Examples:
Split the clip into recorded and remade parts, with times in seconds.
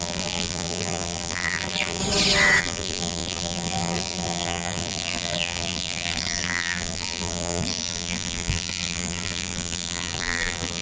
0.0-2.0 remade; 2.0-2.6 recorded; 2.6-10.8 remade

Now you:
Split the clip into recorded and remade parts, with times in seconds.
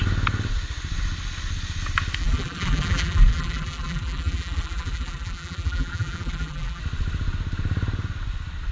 0.0-2.2 recorded; 2.2-6.8 remade; 6.8-8.7 recorded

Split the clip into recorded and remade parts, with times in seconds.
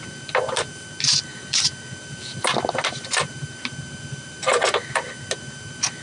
0.0-6.0 remade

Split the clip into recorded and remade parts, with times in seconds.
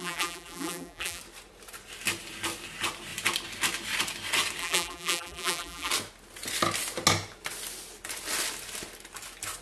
0.0-1.2 remade; 1.2-4.6 recorded; 4.6-5.9 remade; 5.9-9.6 recorded